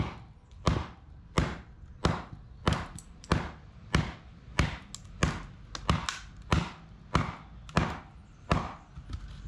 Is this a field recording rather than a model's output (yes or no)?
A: yes